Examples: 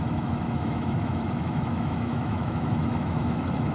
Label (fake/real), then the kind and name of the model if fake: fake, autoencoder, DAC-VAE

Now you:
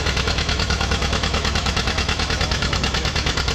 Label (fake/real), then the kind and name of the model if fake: fake, autoencoder, DAC-VAE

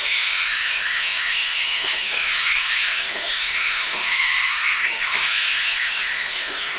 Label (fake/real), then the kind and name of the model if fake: fake, autoencoder, DAC-VAE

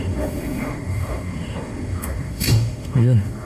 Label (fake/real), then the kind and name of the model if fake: fake, autoencoder, DAC-VAE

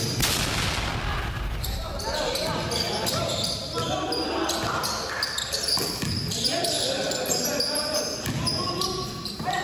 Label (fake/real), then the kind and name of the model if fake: real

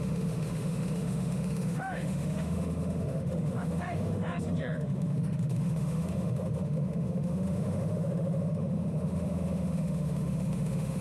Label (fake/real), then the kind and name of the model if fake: fake, autoencoder, DAC-VAE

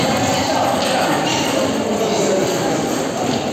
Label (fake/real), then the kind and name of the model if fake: real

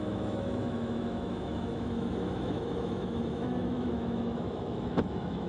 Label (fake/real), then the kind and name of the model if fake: fake, autoencoder, DAC-VAE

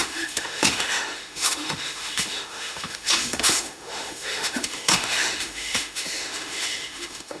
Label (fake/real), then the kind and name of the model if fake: fake, autoencoder, DAC-VAE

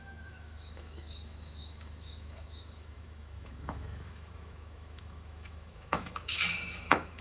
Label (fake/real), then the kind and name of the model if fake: fake, autoencoder, DAC-VAE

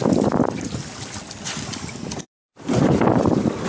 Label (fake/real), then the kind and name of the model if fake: real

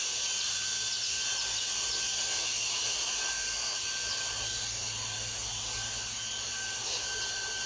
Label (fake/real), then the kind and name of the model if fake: real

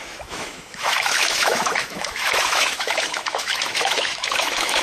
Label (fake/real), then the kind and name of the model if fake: fake, autoencoder, DAC-VAE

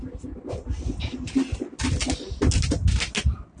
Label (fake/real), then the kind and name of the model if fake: real